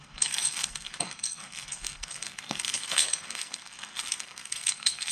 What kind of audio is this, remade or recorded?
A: remade